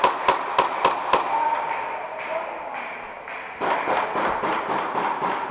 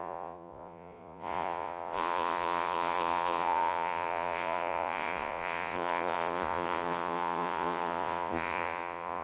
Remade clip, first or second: second